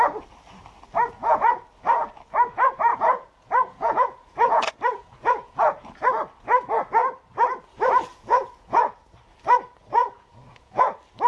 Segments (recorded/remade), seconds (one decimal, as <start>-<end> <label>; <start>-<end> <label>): 0.0-2.9 recorded; 2.9-5.9 remade; 5.9-8.1 recorded; 8.1-8.9 remade; 8.9-10.0 recorded; 10.0-10.8 remade; 10.8-11.3 recorded